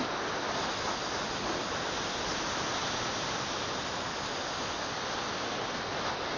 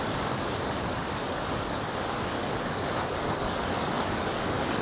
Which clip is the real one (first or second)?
first